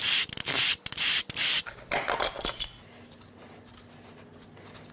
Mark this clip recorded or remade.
recorded